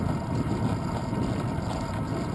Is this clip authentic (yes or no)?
yes